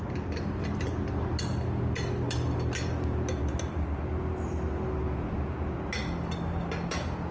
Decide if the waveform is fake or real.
real